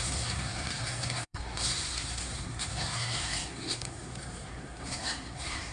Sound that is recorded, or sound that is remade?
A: remade